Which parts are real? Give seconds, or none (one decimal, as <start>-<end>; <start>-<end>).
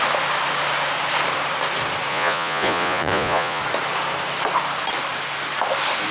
0.0-2.1; 3.6-6.1